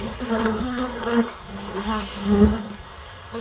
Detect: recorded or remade remade